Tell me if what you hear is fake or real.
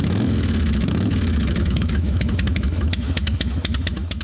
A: fake